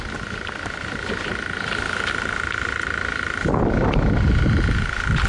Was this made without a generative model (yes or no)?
yes